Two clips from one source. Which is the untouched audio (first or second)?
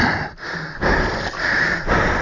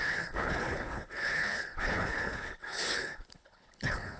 first